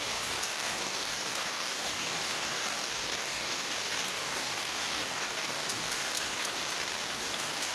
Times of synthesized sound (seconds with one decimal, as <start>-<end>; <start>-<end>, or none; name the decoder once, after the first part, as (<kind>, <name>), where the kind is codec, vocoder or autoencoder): 0.0-6.6 (codec, DAC); 7.1-7.7